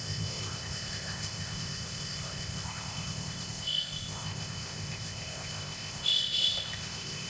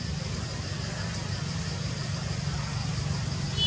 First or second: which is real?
second